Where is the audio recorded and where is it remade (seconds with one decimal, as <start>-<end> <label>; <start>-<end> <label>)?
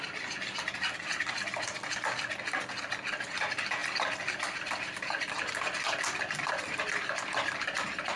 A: 0.0-8.2 recorded